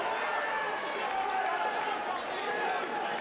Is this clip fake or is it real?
real